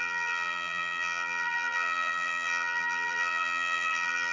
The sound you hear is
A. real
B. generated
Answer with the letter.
B